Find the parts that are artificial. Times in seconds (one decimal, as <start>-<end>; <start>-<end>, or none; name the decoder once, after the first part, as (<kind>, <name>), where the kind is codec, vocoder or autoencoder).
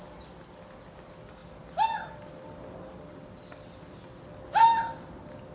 none